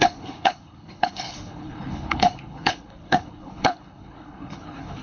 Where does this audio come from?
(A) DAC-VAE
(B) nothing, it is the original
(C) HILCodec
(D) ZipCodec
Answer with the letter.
C